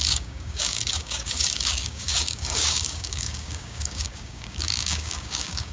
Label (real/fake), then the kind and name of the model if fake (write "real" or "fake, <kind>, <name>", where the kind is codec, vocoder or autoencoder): fake, codec, DAC